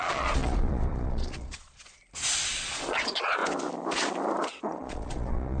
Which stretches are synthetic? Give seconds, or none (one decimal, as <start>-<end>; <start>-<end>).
0.0-2.0; 2.5-3.4; 4.5-5.6